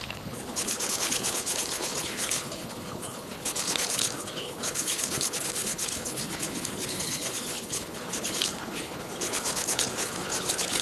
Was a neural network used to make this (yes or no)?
yes